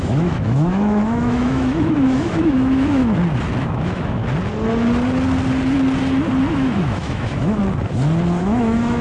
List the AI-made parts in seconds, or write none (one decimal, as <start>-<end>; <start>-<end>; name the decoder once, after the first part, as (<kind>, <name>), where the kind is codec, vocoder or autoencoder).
0.0-3.0 (autoencoder, DAC-VAE); 3.6-4.2; 6.5-7.6; 8.4-9.0